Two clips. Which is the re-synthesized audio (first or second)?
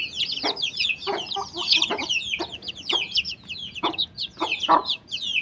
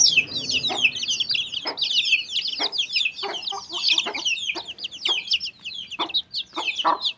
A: first